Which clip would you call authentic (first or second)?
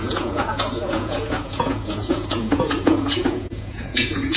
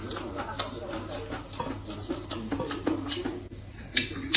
second